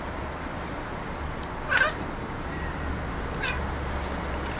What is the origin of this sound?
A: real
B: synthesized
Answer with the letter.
A